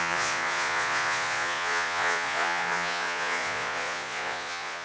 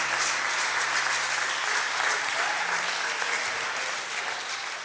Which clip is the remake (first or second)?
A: first